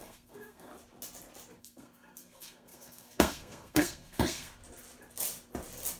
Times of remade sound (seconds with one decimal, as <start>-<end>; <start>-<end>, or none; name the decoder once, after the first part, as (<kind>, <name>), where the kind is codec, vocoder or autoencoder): 0.0-0.7 (codec, SNAC); 1.6-4.6